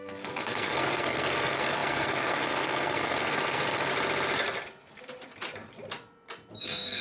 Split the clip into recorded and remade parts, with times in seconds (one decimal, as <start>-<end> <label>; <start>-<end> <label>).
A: 0.0-3.9 remade; 3.9-6.6 recorded; 6.6-7.0 remade

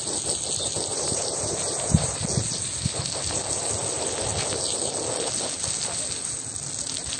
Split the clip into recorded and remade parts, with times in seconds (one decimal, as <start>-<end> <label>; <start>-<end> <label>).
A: 0.0-0.9 recorded; 0.9-2.2 remade; 2.2-7.2 recorded